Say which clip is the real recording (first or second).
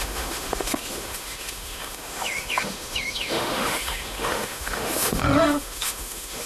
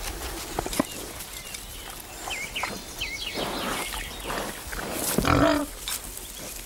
second